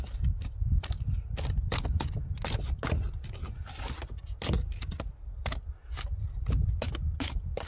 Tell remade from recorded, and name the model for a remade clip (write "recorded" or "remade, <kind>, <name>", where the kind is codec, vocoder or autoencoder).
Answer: recorded